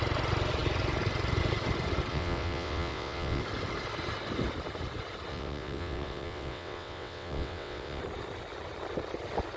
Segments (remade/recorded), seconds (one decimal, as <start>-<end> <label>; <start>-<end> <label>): 0.0-2.1 recorded; 2.1-3.4 remade; 3.4-5.3 recorded; 5.3-8.0 remade; 8.0-9.6 recorded

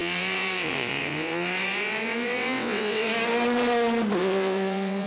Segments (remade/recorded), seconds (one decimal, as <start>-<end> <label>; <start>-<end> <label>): 0.0-3.1 remade; 3.1-4.2 recorded; 4.2-5.1 remade

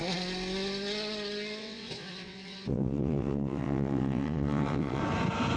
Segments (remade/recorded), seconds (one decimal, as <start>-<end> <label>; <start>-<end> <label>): 0.0-1.6 recorded; 1.6-5.0 remade; 5.0-5.6 recorded

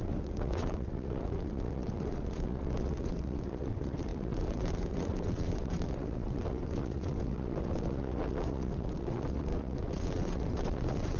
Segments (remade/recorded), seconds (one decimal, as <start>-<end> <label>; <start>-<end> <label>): 0.0-11.2 remade

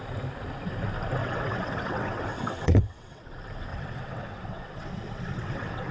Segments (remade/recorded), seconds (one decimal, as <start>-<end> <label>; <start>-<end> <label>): 0.0-1.2 recorded; 1.2-3.3 remade; 3.3-3.7 recorded; 3.7-5.9 remade

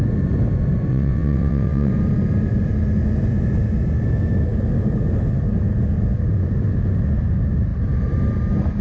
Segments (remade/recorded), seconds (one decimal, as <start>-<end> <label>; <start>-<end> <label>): 0.0-0.9 recorded; 0.9-1.9 remade; 1.9-8.8 recorded

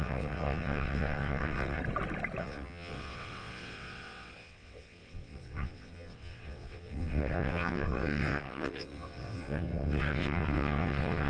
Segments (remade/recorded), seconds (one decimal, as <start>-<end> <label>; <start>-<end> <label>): 0.0-1.8 remade; 1.8-2.4 recorded; 2.4-11.3 remade

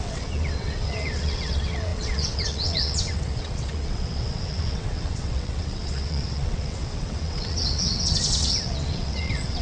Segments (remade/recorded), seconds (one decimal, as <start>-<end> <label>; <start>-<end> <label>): 0.0-9.6 remade